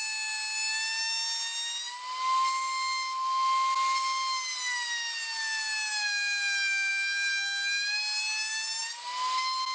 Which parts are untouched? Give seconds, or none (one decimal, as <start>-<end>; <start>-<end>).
0.0-9.7